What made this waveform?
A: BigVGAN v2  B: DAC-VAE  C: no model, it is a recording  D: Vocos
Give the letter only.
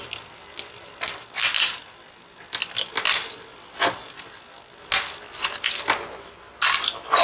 C